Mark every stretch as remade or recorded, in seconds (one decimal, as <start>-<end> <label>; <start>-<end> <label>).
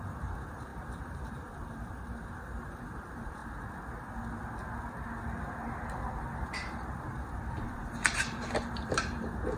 0.0-3.4 remade; 3.4-6.4 recorded; 6.4-9.6 remade